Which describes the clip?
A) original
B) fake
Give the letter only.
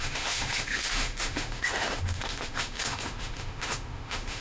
B